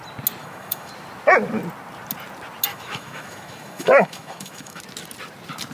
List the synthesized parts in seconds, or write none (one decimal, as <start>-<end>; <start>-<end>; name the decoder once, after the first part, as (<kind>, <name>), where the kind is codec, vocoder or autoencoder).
0.4-0.9 (autoencoder, DAC-VAE); 2.7-4.8